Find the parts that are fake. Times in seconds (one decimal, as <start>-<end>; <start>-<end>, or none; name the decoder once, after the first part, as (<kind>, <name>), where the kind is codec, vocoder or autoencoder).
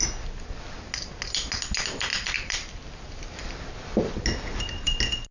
2.1-4.2 (vocoder, BigVGAN v2)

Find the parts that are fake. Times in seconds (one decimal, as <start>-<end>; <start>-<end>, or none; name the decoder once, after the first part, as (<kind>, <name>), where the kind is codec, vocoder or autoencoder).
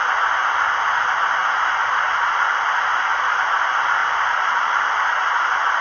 4.0-4.8 (vocoder, BigVGAN v2)